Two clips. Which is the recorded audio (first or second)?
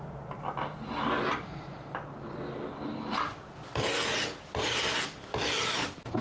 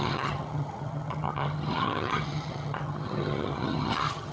first